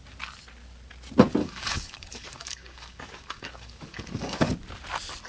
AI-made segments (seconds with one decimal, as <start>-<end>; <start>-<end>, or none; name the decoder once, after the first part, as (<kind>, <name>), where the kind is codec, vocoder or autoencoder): 1.4-4.5 (codec, DAC)